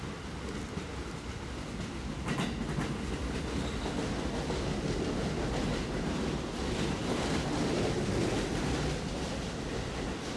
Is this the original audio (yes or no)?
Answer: yes